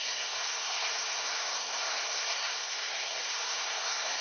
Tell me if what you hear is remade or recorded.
remade